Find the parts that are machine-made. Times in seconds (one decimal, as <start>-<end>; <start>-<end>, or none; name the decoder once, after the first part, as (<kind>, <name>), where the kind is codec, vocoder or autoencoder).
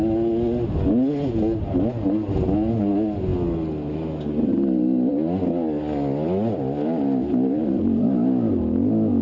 none